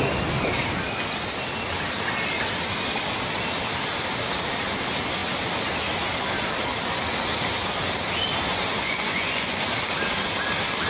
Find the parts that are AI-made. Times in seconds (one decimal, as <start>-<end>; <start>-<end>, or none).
8.5-9.6